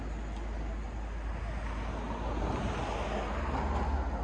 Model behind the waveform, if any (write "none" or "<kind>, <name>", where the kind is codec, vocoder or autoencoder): none